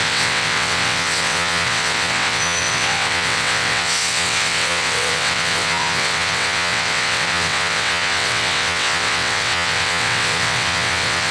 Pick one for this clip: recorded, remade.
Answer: remade